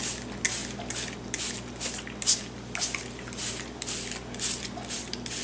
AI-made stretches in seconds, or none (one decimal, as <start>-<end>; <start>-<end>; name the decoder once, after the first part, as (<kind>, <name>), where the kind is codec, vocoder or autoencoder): none